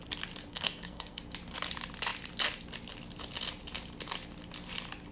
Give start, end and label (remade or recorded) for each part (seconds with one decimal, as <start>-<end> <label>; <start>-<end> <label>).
0.0-0.5 recorded; 0.5-1.2 remade; 1.2-5.1 recorded